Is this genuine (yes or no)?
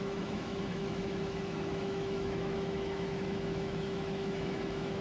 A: no